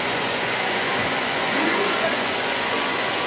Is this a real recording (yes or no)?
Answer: no